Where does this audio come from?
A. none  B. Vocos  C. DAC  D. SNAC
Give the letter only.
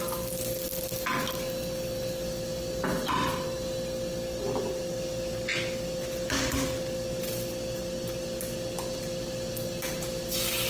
A